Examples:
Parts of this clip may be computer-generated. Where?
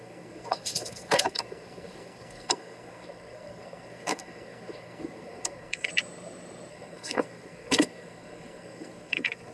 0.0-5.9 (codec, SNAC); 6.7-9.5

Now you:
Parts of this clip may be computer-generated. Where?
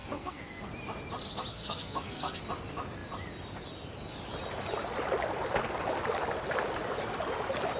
0.0-0.7 (codec, SNAC); 1.5-2.4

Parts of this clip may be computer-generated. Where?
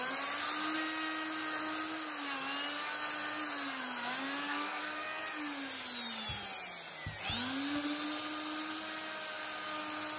4.5-5.2 (codec, SNAC)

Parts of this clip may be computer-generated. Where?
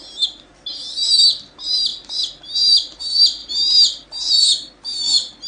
none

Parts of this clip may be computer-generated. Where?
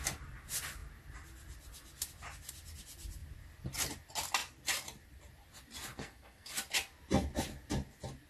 5.9-6.5 (codec, SNAC)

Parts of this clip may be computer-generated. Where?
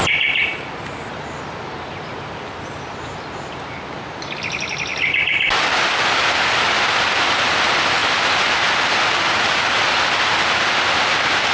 none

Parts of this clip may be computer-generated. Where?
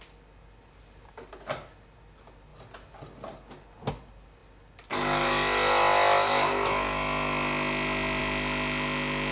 none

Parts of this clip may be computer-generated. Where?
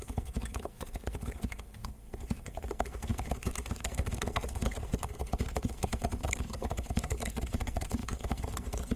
0.0-9.0 (codec, SNAC)